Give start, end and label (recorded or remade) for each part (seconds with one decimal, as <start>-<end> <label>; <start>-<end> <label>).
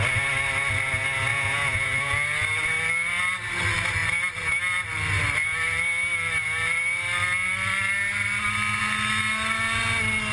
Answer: 0.0-1.3 recorded; 1.3-2.1 remade; 2.1-10.3 recorded